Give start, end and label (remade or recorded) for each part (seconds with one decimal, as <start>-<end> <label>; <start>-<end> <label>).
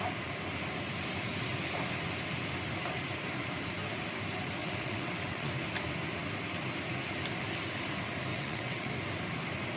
0.0-4.6 recorded; 4.6-5.5 remade; 5.5-8.3 recorded; 8.3-8.9 remade; 8.9-9.8 recorded